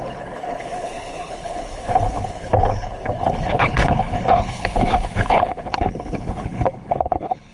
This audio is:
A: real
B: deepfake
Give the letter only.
B